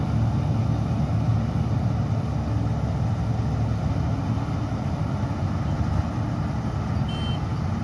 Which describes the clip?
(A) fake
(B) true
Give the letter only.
B